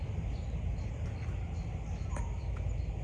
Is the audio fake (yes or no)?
no